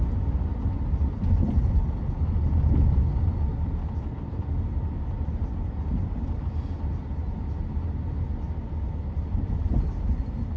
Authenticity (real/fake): real